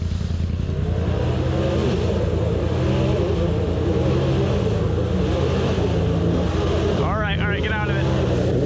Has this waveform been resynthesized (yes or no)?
no